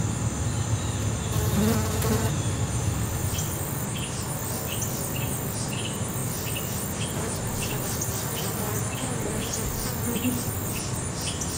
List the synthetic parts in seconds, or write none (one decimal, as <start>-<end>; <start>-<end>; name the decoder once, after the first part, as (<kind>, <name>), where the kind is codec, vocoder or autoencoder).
10.6-11.2 (vocoder, BigVGAN v2)